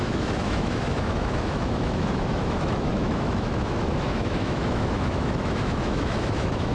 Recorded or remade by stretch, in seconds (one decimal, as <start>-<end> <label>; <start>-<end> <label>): 0.0-6.7 remade